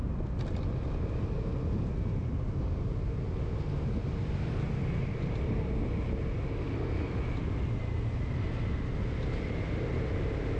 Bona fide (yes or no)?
yes